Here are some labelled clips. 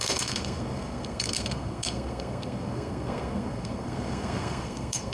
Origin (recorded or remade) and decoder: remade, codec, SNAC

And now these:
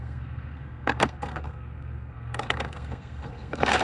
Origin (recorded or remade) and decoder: remade, codec, SNAC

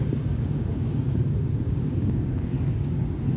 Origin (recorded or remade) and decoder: remade, codec, DAC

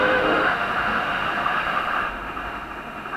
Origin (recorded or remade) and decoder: remade, autoencoder, DAC-VAE